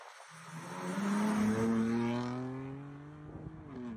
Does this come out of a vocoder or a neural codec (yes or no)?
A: no